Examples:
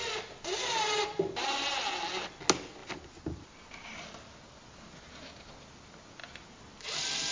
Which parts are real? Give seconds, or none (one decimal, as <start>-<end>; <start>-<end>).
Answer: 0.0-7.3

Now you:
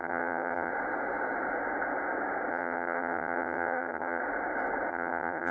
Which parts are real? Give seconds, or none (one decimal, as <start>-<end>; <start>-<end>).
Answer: 0.7-2.5; 4.2-4.9

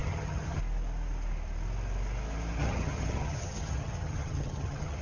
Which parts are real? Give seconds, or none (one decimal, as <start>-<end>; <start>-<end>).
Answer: 0.6-2.6

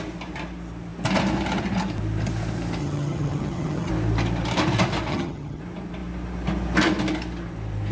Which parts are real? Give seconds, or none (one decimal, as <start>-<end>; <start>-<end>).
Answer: 0.0-2.8; 3.9-5.1; 5.6-7.9

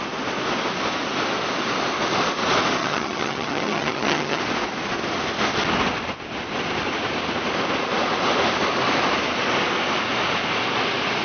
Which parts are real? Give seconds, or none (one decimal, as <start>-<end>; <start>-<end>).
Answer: 0.0-2.8; 4.4-11.2

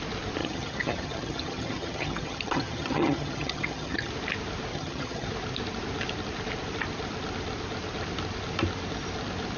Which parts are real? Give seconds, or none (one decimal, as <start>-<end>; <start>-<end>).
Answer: 0.0-0.4; 4.1-4.7; 5.3-9.6

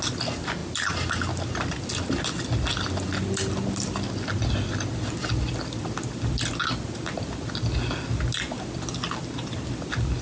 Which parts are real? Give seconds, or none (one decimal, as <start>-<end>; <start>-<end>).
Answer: 0.0-10.2